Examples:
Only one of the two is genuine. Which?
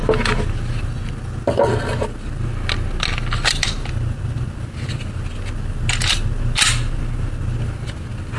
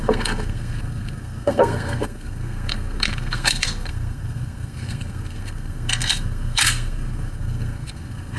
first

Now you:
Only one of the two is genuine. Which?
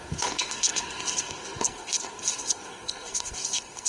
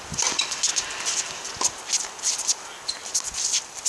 second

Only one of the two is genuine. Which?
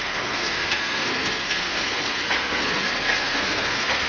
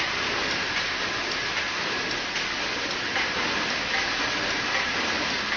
second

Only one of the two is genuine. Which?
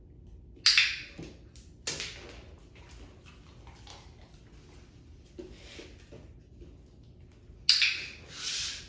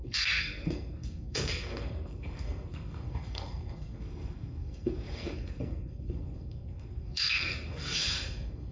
first